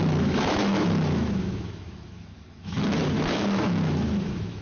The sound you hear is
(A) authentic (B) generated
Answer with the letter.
B